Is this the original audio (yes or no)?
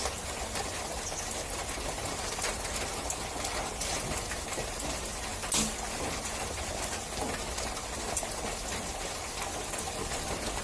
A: yes